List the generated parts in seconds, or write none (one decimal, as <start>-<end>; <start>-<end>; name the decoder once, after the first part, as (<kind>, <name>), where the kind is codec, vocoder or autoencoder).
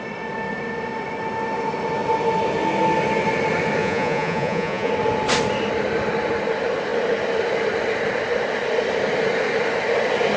3.8-4.9 (vocoder, Vocos)